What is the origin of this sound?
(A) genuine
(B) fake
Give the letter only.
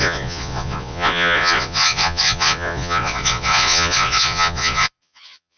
B